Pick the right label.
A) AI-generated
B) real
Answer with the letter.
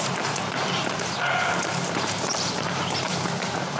A